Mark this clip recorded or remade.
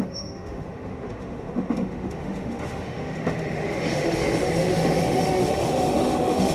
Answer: remade